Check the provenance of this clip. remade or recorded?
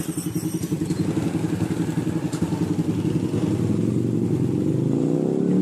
recorded